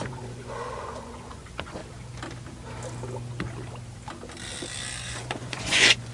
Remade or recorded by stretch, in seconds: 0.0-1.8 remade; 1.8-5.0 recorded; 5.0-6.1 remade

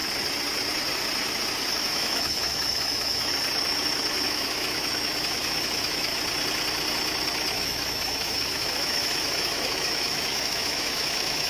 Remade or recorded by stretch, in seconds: 0.0-1.7 recorded; 1.7-3.3 remade; 3.3-4.1 recorded; 4.1-6.1 remade; 6.1-7.5 recorded; 7.5-11.5 remade

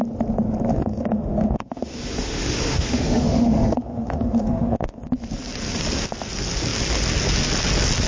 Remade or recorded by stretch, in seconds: 0.0-0.7 recorded; 0.7-5.0 remade; 5.0-8.1 recorded

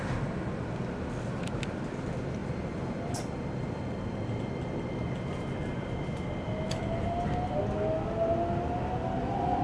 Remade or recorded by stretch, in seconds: 0.0-9.6 recorded